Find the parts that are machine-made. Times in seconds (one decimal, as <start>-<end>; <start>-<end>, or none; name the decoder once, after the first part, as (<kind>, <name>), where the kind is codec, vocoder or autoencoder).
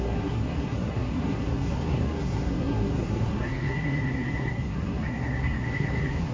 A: 0.0-6.3 (codec, SNAC)